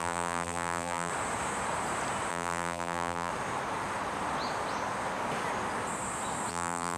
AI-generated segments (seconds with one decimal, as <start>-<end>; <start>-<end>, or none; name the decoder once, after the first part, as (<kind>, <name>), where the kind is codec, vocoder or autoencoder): 0.0-1.1 (vocoder, BigVGAN v2); 2.3-3.3; 6.5-7.0